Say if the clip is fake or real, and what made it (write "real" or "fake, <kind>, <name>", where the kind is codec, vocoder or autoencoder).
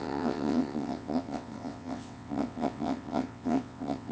fake, vocoder, WaveNeXt